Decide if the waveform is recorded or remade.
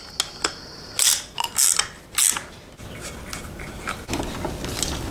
recorded